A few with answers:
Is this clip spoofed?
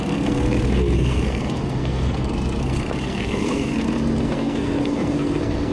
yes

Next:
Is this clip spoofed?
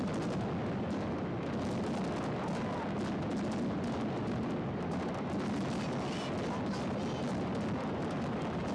no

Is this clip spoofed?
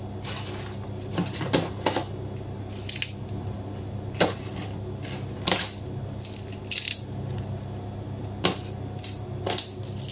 no